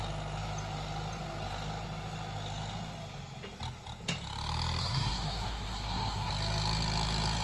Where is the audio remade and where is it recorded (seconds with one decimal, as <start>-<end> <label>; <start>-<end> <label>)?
0.0-4.8 recorded; 4.8-6.3 remade; 6.3-7.4 recorded